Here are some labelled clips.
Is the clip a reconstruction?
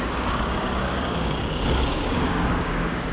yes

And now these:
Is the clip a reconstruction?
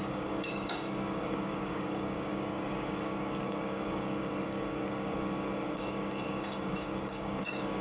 yes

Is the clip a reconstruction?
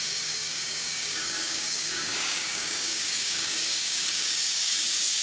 yes